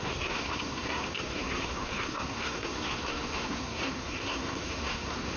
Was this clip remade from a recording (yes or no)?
yes